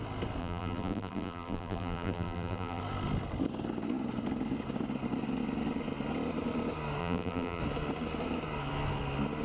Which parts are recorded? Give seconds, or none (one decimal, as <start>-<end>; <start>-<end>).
0.0-0.4; 2.8-7.0; 7.6-9.4